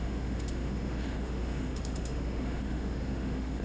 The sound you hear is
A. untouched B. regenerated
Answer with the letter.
B